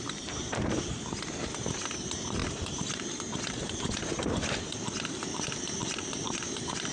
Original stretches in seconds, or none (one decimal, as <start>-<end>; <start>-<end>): none